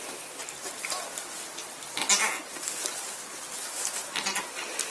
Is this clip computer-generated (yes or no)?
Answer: no